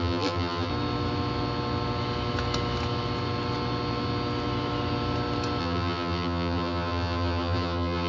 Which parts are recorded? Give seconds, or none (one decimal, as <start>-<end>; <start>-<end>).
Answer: 0.7-5.6